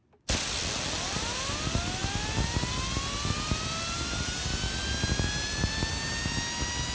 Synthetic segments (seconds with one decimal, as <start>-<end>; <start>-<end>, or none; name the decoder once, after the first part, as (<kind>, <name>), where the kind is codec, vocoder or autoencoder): none

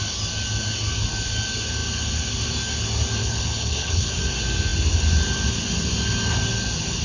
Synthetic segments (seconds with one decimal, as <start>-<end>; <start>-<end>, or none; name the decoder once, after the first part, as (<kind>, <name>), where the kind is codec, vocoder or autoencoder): 3.2-4.1 (codec, HILCodec)

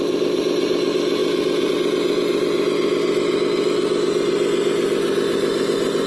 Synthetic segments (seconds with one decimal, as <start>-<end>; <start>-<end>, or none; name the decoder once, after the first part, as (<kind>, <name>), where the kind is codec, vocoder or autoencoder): none